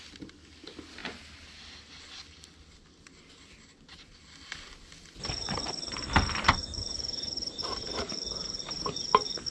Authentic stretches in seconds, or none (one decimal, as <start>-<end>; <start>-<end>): 0.0-1.0; 1.9-6.6; 9.1-9.5